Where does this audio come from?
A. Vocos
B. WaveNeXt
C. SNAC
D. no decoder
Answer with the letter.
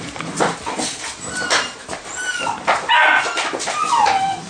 D